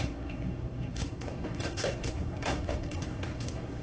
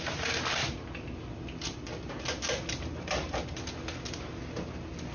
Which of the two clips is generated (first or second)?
first